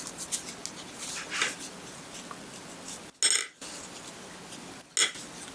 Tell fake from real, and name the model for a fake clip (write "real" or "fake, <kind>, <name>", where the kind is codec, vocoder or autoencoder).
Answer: real